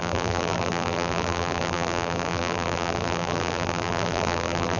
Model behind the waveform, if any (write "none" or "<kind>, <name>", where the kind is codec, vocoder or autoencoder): vocoder, BigVGAN v2